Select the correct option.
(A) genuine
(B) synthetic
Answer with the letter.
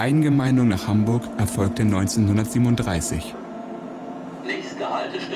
B